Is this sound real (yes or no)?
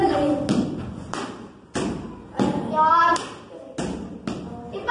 yes